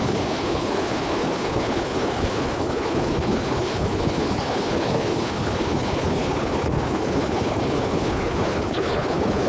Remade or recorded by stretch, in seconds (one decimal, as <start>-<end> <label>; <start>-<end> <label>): 0.0-9.5 remade